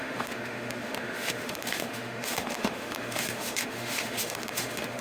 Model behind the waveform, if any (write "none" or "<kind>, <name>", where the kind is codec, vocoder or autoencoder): autoencoder, DAC-VAE